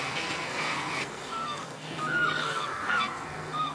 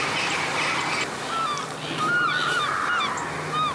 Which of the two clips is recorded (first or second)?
second